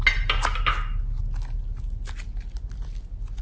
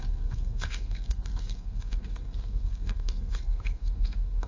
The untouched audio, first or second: first